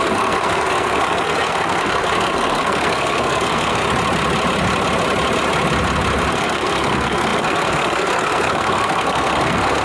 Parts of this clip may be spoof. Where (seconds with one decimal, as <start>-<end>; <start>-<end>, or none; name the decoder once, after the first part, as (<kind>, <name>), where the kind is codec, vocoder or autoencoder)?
0.0-3.8 (codec, SNAC); 6.3-9.8